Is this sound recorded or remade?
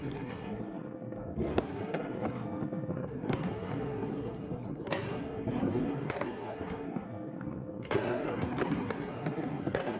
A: remade